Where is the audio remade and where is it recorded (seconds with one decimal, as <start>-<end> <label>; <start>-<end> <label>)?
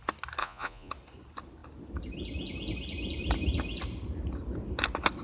0.0-0.4 recorded; 0.4-0.9 remade; 0.9-5.2 recorded